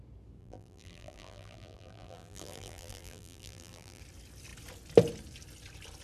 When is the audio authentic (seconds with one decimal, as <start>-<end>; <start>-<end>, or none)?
0.0-0.4; 4.0-6.0